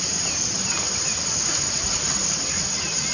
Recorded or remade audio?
recorded